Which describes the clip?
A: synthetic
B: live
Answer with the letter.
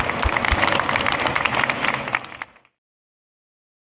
B